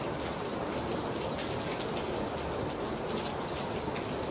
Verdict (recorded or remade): recorded